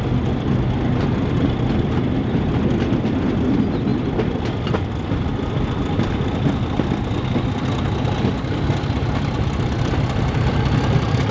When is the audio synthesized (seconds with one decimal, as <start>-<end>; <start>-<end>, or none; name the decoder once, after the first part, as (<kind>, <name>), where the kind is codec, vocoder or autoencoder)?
none